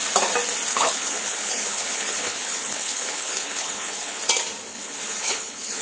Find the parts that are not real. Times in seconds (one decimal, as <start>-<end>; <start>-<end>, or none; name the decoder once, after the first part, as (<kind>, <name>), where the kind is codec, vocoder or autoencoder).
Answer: 0.7-4.2 (codec, HILCodec); 4.7-5.8